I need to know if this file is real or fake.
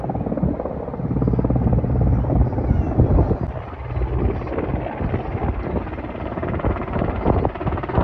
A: real